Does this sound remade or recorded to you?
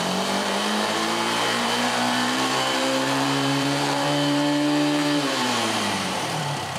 remade